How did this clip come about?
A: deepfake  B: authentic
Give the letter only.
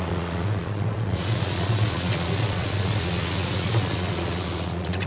A